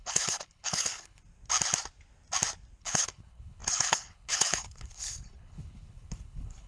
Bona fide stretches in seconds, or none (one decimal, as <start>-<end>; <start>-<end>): 1.2-2.8

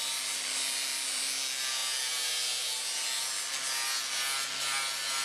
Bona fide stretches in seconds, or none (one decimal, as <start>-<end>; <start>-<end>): 0.0-5.2

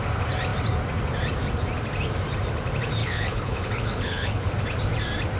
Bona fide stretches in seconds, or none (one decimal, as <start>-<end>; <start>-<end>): 0.0-3.0; 4.5-5.4

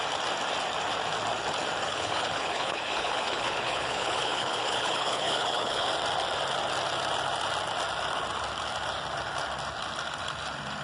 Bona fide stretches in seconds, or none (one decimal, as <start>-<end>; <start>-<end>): 0.0-1.9; 5.9-10.8

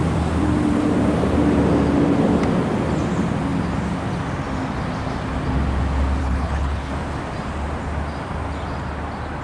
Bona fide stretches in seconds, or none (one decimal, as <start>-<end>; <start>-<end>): 0.0-6.2; 6.9-9.4

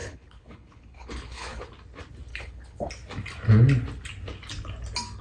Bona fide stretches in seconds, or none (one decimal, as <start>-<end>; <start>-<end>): 1.7-2.3; 2.9-5.2

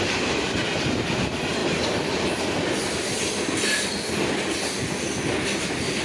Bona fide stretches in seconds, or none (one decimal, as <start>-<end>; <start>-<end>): 0.0-6.0

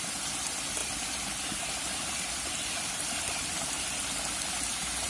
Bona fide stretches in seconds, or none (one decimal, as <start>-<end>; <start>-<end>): 0.0-5.1